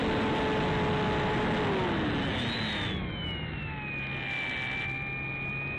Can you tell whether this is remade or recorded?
recorded